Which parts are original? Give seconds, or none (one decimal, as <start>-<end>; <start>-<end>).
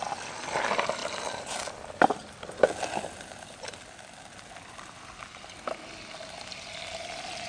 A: 0.0-7.5